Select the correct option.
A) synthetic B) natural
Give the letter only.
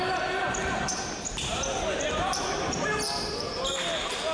B